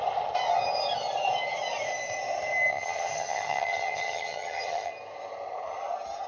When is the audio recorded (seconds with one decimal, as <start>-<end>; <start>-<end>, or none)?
0.0-2.7; 4.9-6.3